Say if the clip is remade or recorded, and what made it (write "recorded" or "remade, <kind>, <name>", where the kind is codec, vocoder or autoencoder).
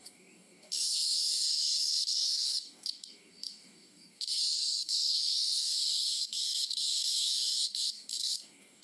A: remade, codec, DAC